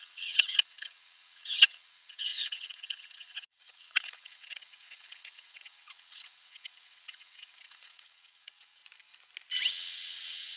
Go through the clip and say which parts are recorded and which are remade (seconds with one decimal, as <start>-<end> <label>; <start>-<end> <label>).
0.0-8.8 remade; 8.8-9.7 recorded; 9.7-10.6 remade

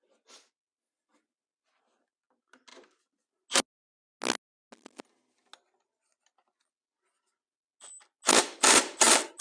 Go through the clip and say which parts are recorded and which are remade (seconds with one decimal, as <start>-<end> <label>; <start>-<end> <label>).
0.0-9.4 recorded

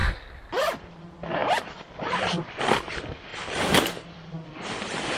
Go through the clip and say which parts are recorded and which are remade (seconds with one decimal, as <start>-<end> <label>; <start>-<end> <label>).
0.0-0.6 recorded; 0.6-5.2 remade

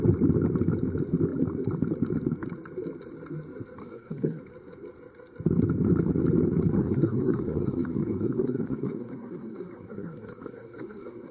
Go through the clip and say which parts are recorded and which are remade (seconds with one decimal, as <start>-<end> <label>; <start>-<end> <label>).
0.0-3.8 recorded; 3.8-4.4 remade; 4.4-6.8 recorded; 6.8-11.3 remade

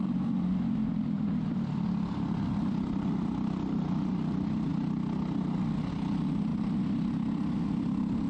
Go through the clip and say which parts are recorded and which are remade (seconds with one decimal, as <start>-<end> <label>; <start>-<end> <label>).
0.0-4.7 remade; 4.7-5.9 recorded; 5.9-6.5 remade; 6.5-7.7 recorded; 7.7-8.3 remade

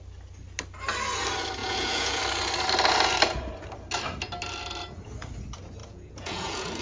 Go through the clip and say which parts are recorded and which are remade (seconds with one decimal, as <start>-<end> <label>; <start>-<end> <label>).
0.0-1.6 recorded; 1.6-2.2 remade; 2.2-5.8 recorded; 5.8-6.8 remade